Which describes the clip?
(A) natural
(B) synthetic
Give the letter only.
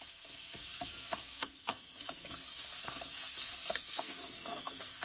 B